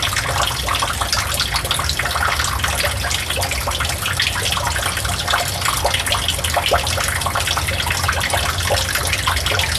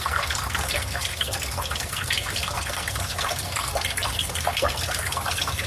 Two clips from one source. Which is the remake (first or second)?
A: second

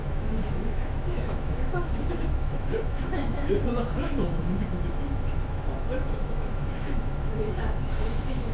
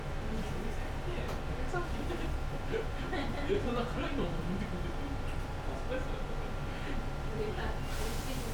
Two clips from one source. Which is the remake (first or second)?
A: first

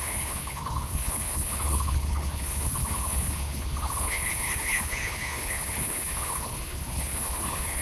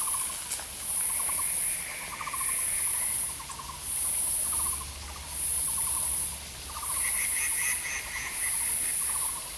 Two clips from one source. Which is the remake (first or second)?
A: first